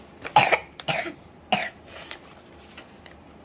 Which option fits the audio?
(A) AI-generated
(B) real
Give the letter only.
B